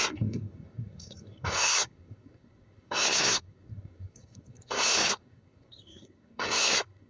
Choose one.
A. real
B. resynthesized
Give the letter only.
B